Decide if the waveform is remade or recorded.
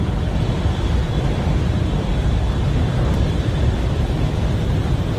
remade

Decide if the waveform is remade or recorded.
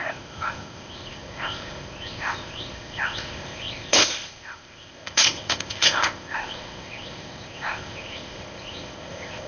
remade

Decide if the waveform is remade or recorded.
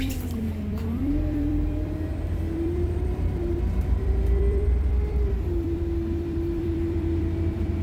remade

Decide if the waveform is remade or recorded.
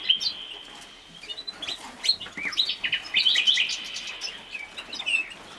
recorded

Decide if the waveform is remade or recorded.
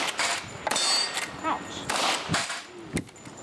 recorded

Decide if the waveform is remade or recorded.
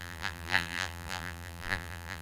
remade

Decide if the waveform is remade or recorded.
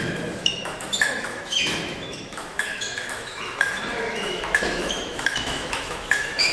remade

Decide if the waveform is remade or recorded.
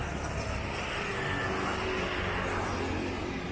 recorded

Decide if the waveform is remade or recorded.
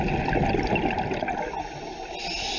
recorded